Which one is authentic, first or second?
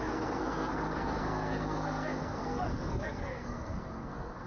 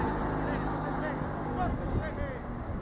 second